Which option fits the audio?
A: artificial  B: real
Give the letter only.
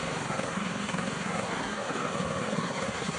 A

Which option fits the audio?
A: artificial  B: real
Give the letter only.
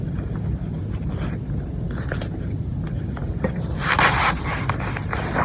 B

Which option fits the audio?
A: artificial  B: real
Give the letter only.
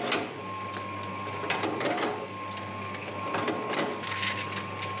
B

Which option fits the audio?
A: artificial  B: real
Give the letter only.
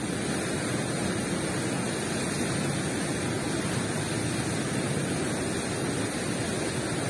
B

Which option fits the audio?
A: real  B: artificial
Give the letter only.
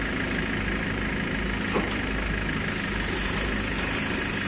A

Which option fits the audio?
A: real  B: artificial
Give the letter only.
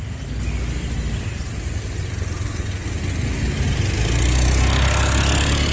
A